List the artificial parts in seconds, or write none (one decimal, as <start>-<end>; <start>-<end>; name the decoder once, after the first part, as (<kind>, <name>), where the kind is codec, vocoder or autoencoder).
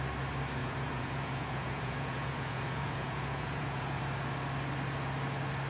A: 0.6-4.0 (vocoder, Vocos)